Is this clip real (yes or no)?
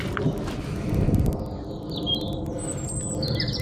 yes